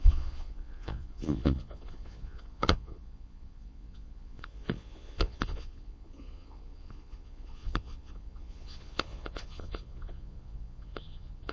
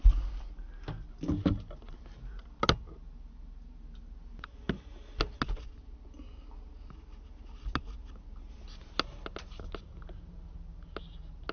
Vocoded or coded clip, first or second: first